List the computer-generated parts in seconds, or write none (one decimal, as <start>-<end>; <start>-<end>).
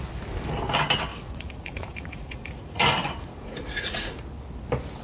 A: 1.1-4.1